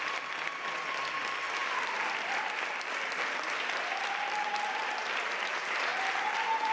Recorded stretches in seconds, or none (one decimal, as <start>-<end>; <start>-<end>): 0.0-1.6; 4.9-6.7